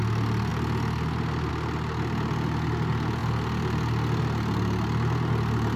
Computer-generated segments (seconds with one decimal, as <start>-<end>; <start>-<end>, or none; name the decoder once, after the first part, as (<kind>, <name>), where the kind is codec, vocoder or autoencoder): none